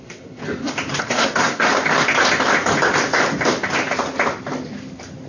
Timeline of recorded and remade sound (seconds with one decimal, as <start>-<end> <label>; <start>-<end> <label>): 0.0-0.4 remade; 0.4-1.0 recorded; 1.0-1.7 remade; 1.7-5.3 recorded